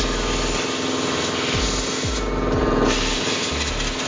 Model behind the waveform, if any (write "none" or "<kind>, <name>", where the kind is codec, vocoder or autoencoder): none